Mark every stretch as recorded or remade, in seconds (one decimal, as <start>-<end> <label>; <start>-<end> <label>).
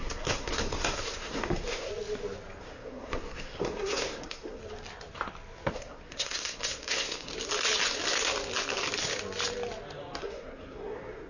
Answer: 0.0-1.9 remade; 1.9-2.6 recorded; 2.6-4.6 remade; 4.6-5.7 recorded; 5.7-7.3 remade; 7.3-10.2 recorded; 10.2-11.3 remade